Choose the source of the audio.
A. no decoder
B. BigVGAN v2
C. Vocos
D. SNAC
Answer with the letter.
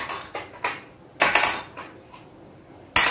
A